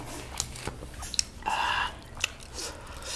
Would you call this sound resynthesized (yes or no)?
no